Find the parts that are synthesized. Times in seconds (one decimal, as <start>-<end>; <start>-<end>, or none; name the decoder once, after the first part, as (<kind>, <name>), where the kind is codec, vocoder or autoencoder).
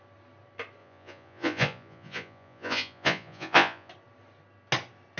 0.8-3.9 (vocoder, Vocos)